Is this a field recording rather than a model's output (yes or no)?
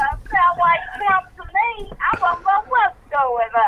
yes